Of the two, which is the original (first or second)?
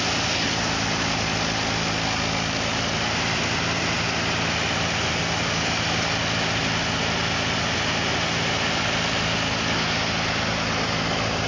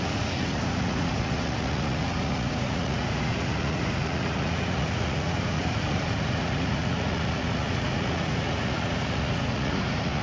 first